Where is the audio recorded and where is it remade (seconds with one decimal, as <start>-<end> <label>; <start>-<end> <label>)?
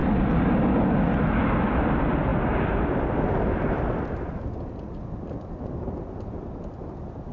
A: 0.0-7.3 recorded